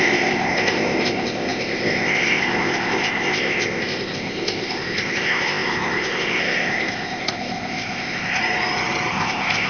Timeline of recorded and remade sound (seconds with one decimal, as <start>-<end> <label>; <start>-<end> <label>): 0.0-8.4 remade; 8.4-9.1 recorded; 9.1-9.7 remade